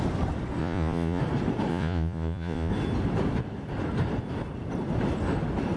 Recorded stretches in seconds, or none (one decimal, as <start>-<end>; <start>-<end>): 0.0-0.6; 1.2-1.7; 2.7-5.8